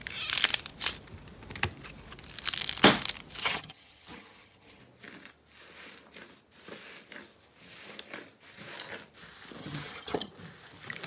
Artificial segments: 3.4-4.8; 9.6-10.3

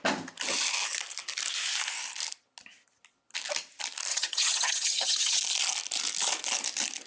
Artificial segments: 4.1-5.4